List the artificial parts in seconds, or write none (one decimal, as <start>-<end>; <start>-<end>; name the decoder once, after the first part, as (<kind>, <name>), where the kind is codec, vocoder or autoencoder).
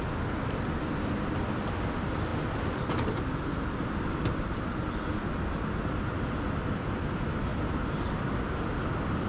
none